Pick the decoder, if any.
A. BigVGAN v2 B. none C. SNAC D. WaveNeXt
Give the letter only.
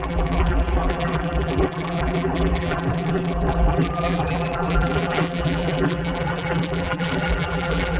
A